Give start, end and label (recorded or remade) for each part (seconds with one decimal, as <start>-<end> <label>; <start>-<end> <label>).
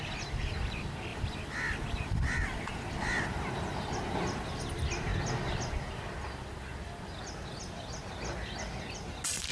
0.0-1.1 recorded; 1.1-4.6 remade; 4.6-9.5 recorded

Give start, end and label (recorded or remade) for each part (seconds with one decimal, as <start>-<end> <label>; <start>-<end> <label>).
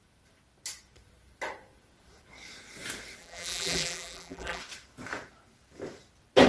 0.0-3.2 recorded; 3.2-4.6 remade; 4.6-6.5 recorded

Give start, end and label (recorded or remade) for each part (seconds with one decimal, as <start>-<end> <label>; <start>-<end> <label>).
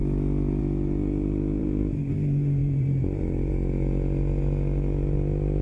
0.0-1.6 recorded; 1.6-2.1 remade; 2.1-2.6 recorded; 2.6-3.5 remade; 3.5-5.6 recorded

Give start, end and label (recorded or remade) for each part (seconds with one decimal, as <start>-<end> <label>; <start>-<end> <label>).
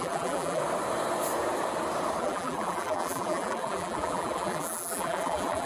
0.0-0.6 remade; 0.6-2.2 recorded; 2.2-5.7 remade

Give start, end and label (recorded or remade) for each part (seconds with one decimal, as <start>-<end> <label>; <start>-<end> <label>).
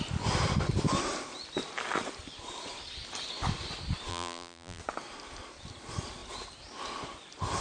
0.0-4.1 recorded; 4.1-4.8 remade; 4.8-7.6 recorded